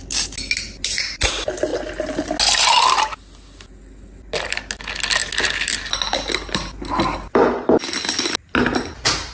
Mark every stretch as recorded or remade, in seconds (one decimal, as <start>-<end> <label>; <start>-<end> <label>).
0.0-9.3 recorded